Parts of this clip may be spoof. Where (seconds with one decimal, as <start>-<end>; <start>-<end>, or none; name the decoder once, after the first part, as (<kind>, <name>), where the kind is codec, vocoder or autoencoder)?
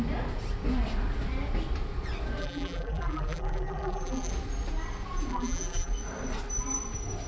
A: 2.4-4.3 (vocoder, BigVGAN v2); 5.3-5.9